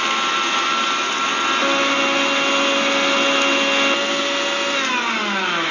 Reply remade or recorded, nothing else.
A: recorded